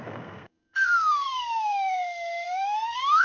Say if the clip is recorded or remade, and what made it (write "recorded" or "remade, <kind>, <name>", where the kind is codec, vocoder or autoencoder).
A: remade, codec, SNAC